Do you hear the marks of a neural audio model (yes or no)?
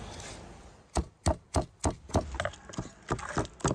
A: no